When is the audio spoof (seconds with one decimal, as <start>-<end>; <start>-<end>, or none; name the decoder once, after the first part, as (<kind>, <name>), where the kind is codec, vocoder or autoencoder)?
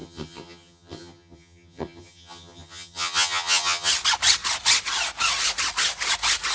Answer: 0.0-3.9 (vocoder, HiFi-GAN)